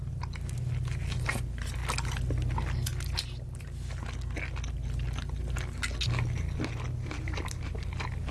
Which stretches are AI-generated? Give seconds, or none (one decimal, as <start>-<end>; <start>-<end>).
none